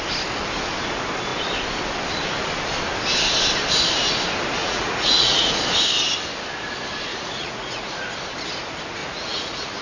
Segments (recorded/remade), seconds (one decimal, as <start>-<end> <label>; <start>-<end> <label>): 0.0-4.6 recorded; 4.6-5.5 remade; 5.5-7.1 recorded; 7.1-8.0 remade; 8.0-9.0 recorded; 9.0-9.8 remade